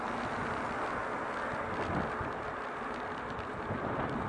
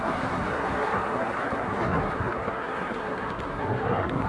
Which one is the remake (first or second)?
second